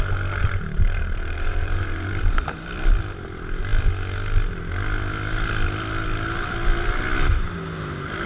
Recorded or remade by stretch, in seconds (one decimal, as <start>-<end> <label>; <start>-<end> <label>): 0.0-0.4 recorded; 0.4-2.7 remade; 2.7-8.3 recorded